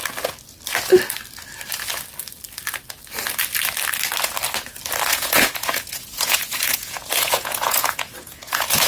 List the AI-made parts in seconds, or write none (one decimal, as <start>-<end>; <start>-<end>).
5.1-8.9